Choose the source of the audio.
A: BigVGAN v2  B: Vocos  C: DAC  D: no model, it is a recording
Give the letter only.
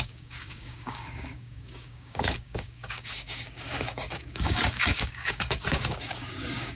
C